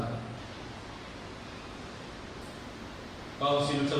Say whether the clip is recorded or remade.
recorded